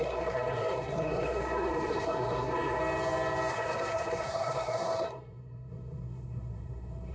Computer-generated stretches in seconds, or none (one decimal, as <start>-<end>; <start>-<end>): 0.0-2.8; 3.5-7.1